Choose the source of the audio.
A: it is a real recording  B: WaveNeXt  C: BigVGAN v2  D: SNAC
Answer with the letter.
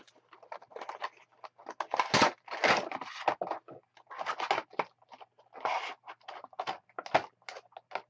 A